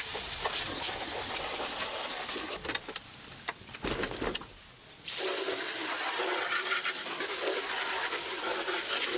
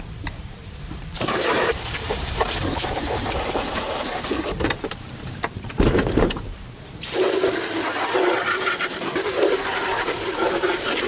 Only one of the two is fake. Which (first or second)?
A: second